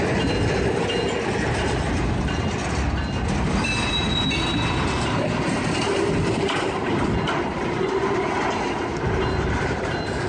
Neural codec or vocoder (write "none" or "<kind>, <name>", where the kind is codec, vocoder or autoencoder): none